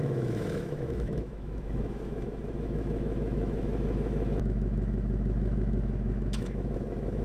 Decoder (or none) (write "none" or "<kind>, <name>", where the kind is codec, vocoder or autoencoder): autoencoder, DAC-VAE